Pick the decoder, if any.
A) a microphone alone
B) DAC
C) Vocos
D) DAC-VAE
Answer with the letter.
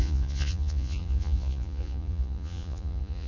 C